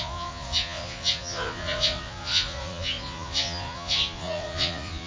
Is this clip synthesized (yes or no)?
yes